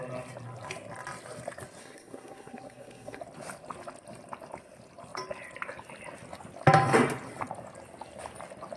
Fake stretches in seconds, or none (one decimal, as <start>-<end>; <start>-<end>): 1.8-3.2